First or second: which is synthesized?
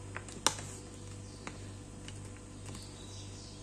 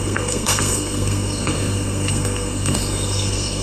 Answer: second